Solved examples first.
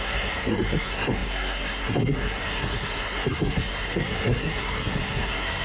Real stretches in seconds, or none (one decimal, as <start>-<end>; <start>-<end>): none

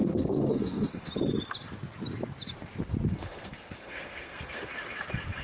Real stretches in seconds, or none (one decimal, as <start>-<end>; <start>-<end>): 1.1-3.1; 4.7-5.4

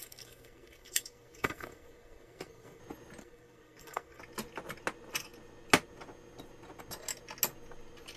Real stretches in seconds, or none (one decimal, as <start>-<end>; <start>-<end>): 2.8-3.2; 4.2-8.2

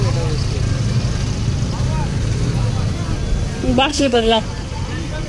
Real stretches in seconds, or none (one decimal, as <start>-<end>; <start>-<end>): 0.0-3.9; 4.4-5.3